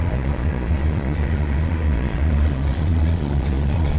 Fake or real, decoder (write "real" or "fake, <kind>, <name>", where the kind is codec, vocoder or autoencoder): fake, vocoder, Vocos